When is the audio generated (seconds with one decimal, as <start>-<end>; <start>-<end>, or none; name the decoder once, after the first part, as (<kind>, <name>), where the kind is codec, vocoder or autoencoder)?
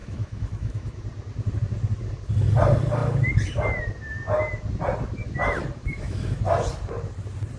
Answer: 0.0-1.0 (autoencoder, DAC-VAE); 5.8-6.4